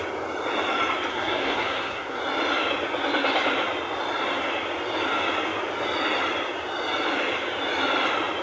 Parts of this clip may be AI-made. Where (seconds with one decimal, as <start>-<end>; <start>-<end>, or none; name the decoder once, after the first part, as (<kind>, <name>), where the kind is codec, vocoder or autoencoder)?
1.1-2.2 (codec, SNAC)